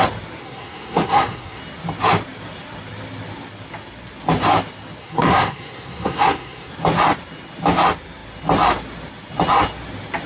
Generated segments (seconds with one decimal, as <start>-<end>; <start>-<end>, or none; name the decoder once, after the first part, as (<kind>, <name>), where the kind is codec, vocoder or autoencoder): 0.4-1.6 (codec, SNAC); 5.0-6.7

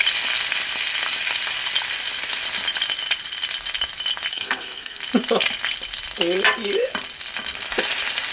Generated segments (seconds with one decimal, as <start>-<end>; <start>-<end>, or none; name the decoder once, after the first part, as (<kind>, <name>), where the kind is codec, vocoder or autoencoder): 4.3-5.0 (codec, SNAC)

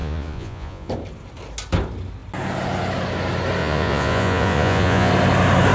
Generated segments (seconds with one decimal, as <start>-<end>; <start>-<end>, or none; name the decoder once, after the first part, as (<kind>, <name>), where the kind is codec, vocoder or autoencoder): 0.0-0.9 (vocoder, Vocos); 3.6-5.1